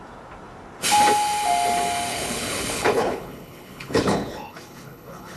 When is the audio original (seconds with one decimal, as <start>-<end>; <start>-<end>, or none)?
0.0-2.1